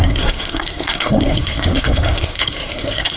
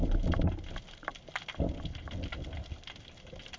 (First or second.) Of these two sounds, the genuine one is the second